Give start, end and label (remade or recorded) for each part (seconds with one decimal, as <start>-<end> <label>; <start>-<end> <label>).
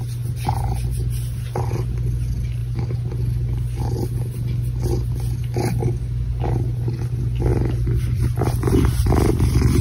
0.0-9.8 recorded